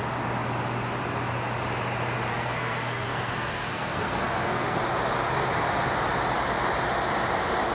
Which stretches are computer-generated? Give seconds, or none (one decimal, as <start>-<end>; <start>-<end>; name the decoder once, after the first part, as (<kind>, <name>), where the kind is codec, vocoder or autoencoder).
2.3-4.8 (codec, SNAC)

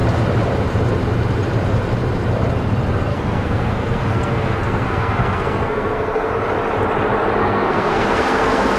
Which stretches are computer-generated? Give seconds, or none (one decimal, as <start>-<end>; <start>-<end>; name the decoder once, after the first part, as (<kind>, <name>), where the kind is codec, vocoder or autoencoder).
3.1-6.3 (codec, SNAC); 7.4-8.8

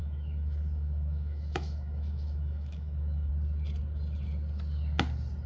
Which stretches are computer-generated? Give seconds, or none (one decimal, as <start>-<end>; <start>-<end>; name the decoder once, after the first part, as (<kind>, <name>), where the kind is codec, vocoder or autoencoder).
0.0-3.3 (autoencoder, DAC-VAE)

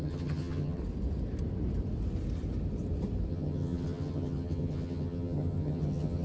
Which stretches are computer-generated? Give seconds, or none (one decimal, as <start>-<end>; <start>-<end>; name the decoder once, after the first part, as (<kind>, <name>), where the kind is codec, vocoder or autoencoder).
0.0-0.8 (vocoder, HiFi-GAN); 3.3-6.2

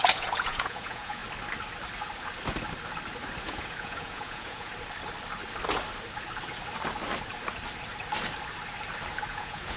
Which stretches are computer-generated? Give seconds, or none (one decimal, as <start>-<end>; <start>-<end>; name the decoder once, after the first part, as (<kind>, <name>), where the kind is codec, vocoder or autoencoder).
0.0-1.2 (vocoder, Vocos); 3.4-4.7; 9.3-9.8